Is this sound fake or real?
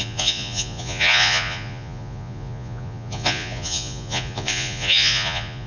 fake